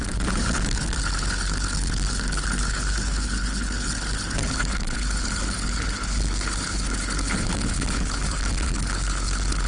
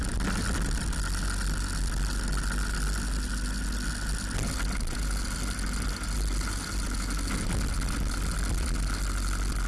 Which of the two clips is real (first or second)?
second